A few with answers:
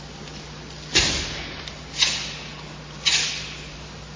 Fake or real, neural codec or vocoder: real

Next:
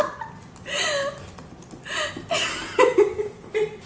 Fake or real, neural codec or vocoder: real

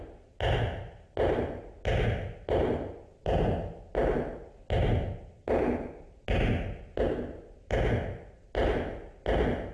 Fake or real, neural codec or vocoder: real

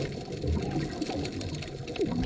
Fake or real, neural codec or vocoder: real